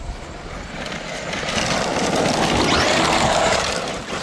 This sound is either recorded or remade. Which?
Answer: recorded